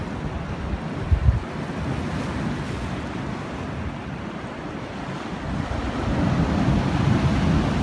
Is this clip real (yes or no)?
yes